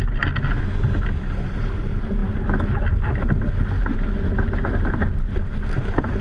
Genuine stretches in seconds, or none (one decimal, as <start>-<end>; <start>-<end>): 0.0-6.2